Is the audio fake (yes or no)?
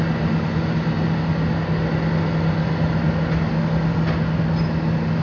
no